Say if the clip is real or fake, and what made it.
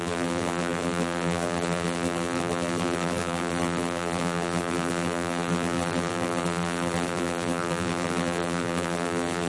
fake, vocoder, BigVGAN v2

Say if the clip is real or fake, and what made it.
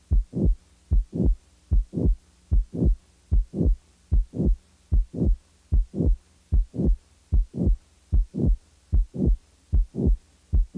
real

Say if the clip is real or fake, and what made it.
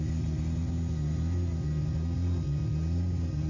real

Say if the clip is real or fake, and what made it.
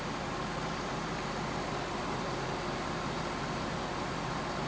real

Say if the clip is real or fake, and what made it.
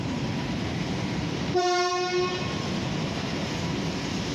fake, vocoder, BigVGAN v2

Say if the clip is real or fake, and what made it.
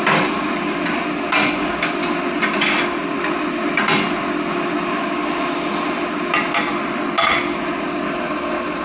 real